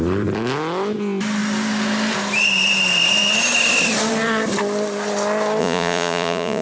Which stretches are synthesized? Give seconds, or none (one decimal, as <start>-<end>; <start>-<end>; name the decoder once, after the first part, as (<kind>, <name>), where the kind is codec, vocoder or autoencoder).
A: 5.6-6.6 (vocoder, Vocos)